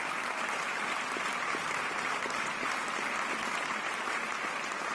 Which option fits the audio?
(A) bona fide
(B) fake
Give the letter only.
A